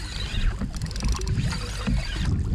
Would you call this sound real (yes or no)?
yes